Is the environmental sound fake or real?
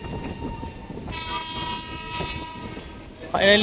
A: real